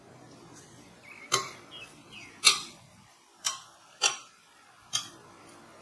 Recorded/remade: remade